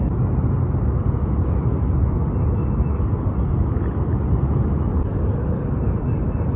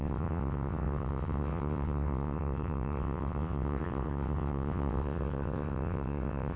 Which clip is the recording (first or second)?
first